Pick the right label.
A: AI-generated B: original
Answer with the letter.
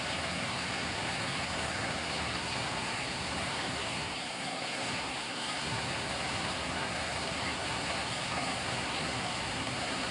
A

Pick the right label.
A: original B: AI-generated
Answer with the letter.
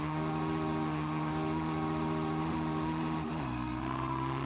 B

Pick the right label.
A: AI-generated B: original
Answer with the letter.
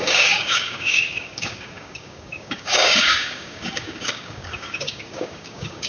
A